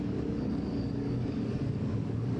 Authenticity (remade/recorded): remade